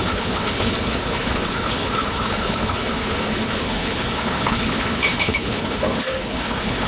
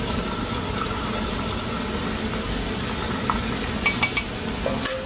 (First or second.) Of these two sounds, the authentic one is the second